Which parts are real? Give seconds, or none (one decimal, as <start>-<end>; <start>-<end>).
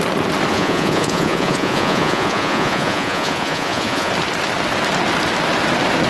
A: 0.0-0.5; 4.1-6.1